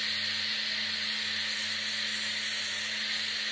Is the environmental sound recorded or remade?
recorded